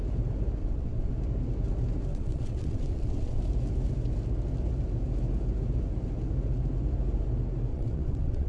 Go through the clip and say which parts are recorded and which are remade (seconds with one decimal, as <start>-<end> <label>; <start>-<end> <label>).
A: 0.0-0.6 recorded; 0.6-1.1 remade; 1.1-2.1 recorded; 2.1-3.4 remade; 3.4-7.7 recorded; 7.7-8.5 remade